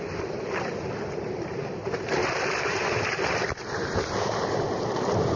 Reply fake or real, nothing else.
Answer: fake